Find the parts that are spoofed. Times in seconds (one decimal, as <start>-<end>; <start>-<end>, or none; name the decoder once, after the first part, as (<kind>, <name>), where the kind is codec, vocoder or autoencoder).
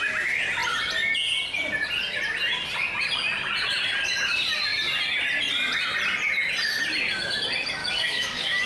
7.8-8.7 (codec, DAC)